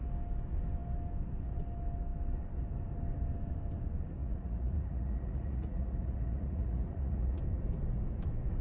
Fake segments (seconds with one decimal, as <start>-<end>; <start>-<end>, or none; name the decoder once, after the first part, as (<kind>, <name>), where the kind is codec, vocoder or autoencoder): 4.2-7.4 (vocoder, Vocos)